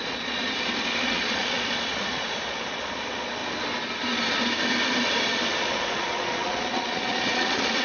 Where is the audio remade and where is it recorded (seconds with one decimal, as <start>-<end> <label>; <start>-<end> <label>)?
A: 0.0-0.4 remade; 0.4-1.1 recorded; 1.1-3.4 remade; 3.4-5.6 recorded; 5.6-7.8 remade

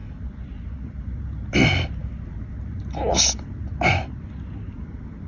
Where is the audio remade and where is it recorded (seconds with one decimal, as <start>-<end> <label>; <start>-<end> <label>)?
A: 0.0-5.3 recorded

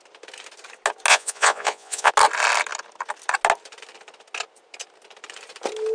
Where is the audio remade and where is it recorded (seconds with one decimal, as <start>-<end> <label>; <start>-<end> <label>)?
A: 0.0-1.1 recorded; 1.1-2.1 remade; 2.1-5.9 recorded

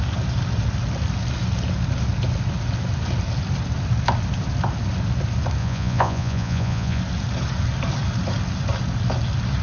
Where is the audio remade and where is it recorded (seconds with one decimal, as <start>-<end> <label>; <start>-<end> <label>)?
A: 0.0-5.6 recorded; 5.6-7.0 remade; 7.0-9.6 recorded

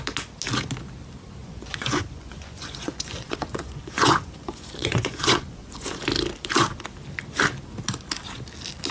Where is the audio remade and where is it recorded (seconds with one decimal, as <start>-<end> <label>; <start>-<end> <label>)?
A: 0.0-1.4 recorded; 1.4-6.0 remade; 6.0-8.9 recorded

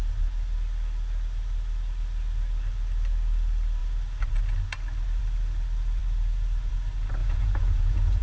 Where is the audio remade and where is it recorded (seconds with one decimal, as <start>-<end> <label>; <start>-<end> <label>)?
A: 0.0-7.2 recorded; 7.2-8.2 remade

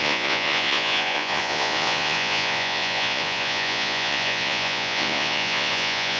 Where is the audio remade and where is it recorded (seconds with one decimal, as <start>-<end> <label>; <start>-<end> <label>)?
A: 0.0-6.2 remade

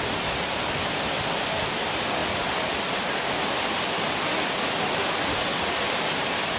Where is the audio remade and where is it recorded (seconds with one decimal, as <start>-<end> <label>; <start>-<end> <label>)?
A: 0.0-6.6 recorded